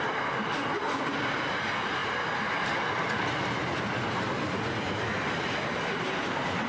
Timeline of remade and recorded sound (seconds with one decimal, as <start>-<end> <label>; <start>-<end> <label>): 0.0-6.7 recorded